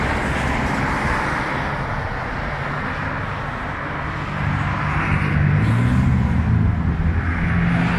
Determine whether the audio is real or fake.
real